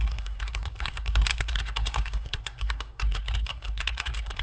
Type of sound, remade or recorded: remade